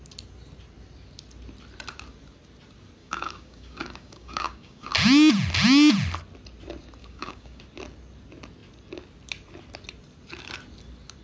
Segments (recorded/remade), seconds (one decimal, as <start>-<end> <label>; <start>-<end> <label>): 0.0-3.0 recorded; 3.0-4.9 remade; 4.9-7.0 recorded; 7.0-7.6 remade; 7.6-11.2 recorded